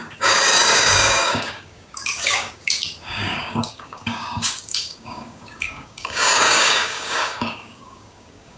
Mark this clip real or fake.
fake